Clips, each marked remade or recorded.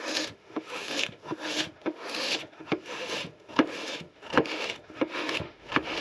remade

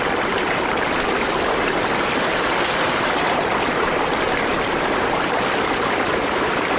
recorded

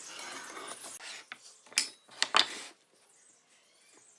recorded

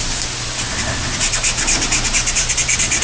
recorded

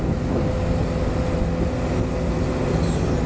recorded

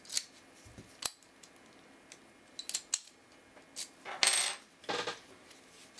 recorded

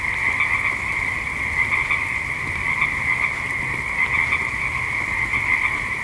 recorded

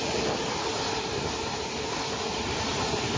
recorded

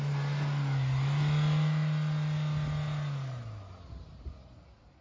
recorded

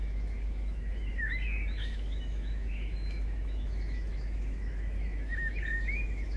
remade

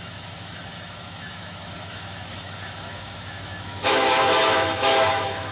remade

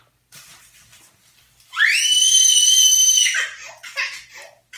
recorded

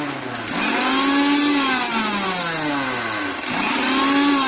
recorded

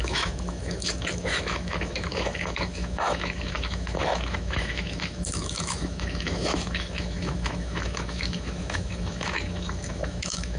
remade